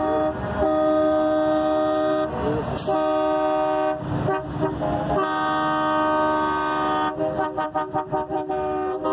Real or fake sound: real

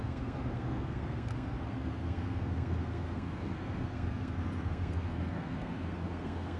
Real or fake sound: fake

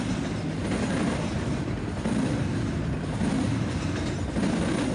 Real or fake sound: real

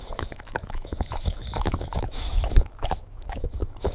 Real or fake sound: fake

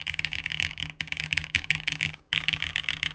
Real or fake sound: fake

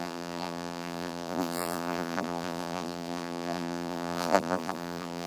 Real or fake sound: fake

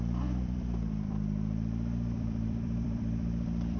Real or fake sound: fake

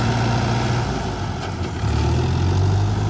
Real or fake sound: real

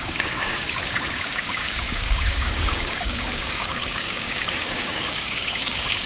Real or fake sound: fake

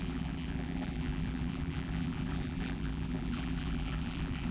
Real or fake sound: fake